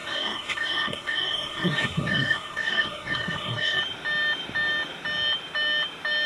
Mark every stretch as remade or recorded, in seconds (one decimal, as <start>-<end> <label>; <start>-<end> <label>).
0.0-3.8 remade; 3.8-6.3 recorded